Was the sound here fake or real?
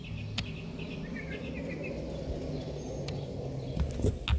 real